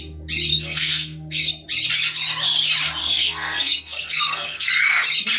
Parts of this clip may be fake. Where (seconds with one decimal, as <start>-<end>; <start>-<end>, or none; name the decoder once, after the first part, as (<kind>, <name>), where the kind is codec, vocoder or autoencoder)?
0.5-1.5 (codec, SNAC); 3.0-4.7